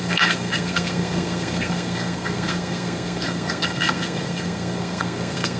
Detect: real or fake fake